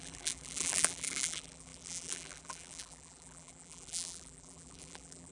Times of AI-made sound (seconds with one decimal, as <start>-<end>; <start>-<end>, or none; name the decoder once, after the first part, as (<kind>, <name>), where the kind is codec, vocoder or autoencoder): 0.0-5.3 (vocoder, BigVGAN v2)